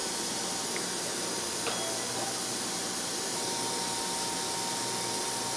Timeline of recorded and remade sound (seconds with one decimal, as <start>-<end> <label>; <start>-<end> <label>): 0.0-5.6 recorded